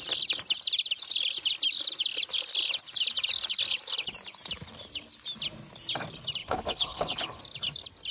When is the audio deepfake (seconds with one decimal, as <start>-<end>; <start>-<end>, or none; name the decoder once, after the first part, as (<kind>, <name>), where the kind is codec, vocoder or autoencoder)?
6.4-7.4 (codec, HILCodec)